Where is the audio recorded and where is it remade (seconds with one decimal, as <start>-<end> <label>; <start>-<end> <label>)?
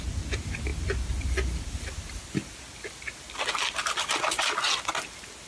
0.0-5.5 recorded